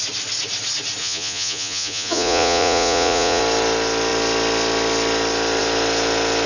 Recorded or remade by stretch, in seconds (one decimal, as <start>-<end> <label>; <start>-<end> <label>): 0.0-1.0 recorded; 1.0-3.4 remade; 3.4-6.5 recorded